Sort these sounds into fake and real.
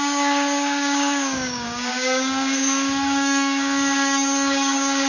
fake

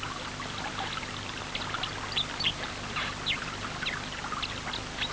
real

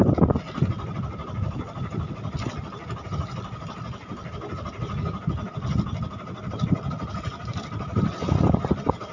real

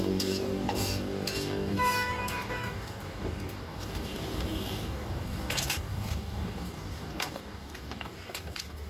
fake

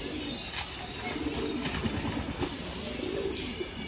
real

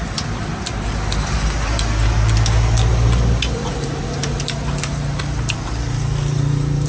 real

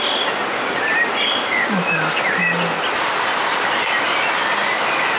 real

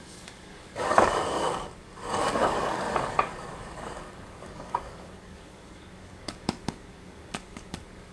fake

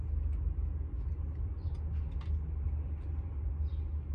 real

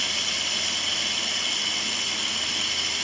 real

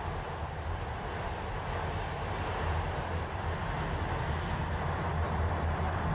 real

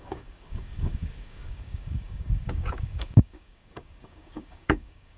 fake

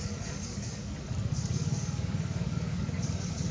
fake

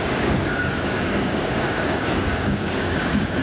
fake